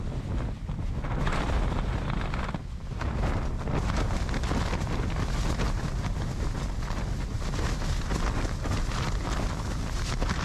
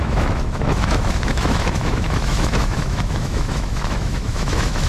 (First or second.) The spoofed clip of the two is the second